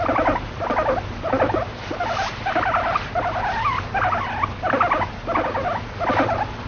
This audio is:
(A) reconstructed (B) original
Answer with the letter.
B